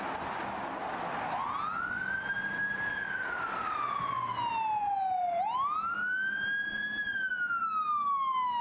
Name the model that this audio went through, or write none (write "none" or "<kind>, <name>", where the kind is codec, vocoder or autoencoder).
none